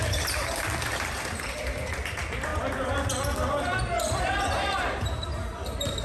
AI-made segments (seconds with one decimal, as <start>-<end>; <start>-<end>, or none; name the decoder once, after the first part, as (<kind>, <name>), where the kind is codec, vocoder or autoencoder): 0.0-2.5 (vocoder, BigVGAN v2); 4.2-6.0